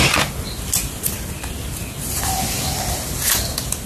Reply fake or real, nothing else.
real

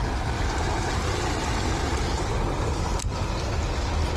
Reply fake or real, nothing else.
real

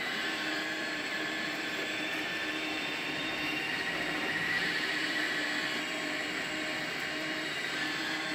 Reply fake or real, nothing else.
fake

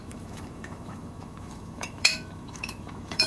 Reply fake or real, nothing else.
fake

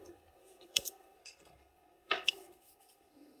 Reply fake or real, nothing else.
fake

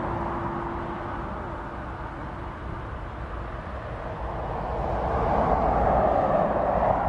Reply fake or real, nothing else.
real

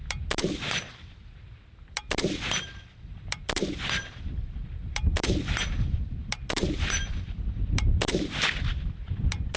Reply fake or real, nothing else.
fake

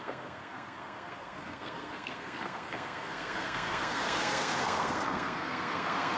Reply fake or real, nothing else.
fake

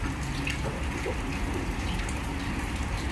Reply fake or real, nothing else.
real